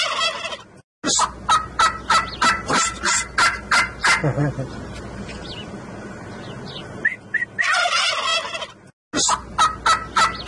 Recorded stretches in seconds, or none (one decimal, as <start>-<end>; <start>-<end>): 0.0-10.5